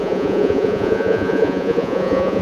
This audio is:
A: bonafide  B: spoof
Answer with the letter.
B